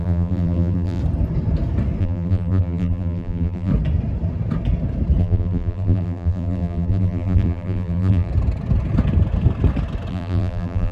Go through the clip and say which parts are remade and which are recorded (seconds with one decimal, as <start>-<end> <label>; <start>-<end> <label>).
0.0-1.0 remade; 1.0-2.0 recorded; 2.0-3.7 remade; 3.7-5.2 recorded; 5.2-8.3 remade; 8.3-10.1 recorded; 10.1-10.9 remade